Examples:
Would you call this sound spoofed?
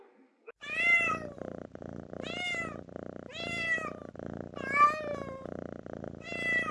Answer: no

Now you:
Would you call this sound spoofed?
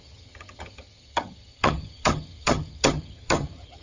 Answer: yes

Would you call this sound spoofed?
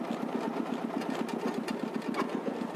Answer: no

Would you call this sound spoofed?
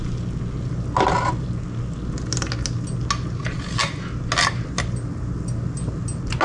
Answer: no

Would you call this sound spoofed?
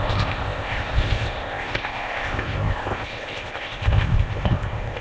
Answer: yes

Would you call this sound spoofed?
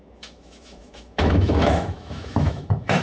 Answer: yes